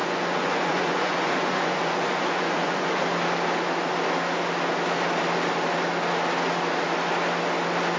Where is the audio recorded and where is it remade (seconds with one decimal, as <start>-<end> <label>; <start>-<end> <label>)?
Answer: 0.0-3.1 remade; 3.1-8.0 recorded